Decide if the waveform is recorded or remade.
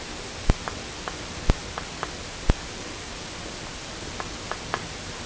recorded